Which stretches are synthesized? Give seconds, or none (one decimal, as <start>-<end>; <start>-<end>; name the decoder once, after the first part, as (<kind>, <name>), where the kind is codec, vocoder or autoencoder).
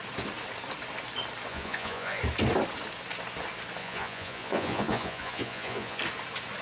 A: 1.5-2.2 (vocoder, Vocos); 3.8-6.0